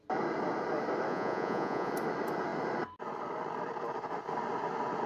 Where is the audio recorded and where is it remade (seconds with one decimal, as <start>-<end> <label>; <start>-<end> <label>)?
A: 0.0-1.1 recorded; 1.1-1.9 remade; 1.9-5.1 recorded